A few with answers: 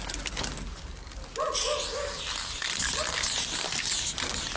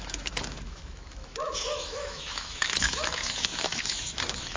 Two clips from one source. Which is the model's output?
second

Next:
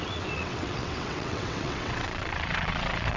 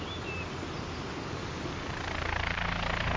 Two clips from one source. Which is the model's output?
first